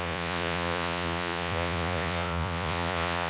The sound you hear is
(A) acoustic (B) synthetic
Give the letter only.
B